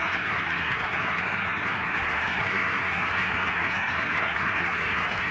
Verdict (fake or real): fake